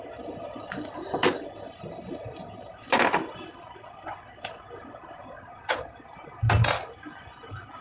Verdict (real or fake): real